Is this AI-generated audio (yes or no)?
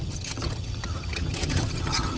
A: yes